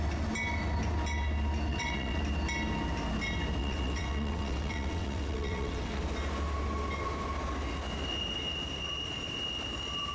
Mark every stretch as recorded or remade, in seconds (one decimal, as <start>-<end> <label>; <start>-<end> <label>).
0.0-1.7 recorded; 1.7-2.2 remade; 2.2-3.6 recorded; 3.6-6.0 remade; 6.0-10.1 recorded